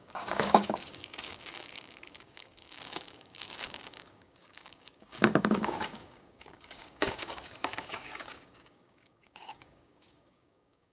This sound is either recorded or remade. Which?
remade